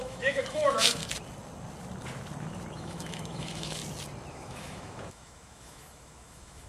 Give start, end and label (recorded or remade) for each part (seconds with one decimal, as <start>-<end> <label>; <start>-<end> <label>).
0.0-1.0 remade; 1.0-2.7 recorded; 2.7-3.8 remade; 3.8-4.3 recorded; 4.3-6.7 remade